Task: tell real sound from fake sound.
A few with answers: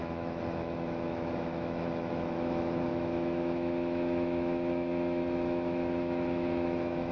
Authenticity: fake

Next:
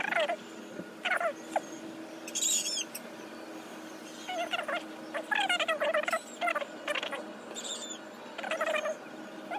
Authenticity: real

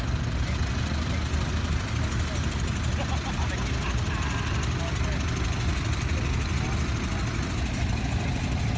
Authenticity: real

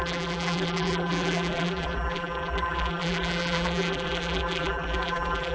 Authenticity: fake